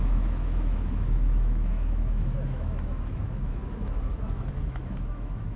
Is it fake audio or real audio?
fake